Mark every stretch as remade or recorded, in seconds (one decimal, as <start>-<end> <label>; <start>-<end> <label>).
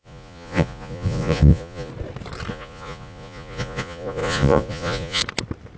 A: 0.0-1.9 remade; 1.9-2.5 recorded; 2.5-5.2 remade; 5.2-5.8 recorded